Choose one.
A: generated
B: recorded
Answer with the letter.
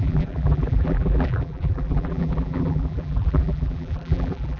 A